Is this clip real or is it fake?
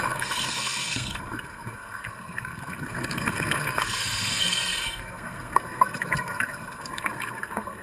fake